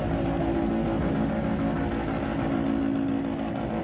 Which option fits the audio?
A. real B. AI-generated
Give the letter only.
A